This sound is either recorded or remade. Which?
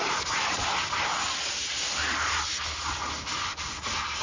recorded